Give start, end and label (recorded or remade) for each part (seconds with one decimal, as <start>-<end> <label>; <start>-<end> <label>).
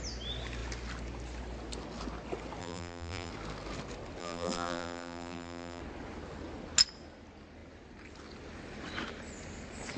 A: 0.0-2.6 recorded; 2.6-3.3 remade; 3.3-4.2 recorded; 4.2-5.8 remade; 5.8-10.0 recorded